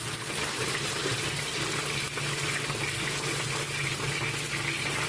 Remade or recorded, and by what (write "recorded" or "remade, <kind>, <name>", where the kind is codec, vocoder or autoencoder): recorded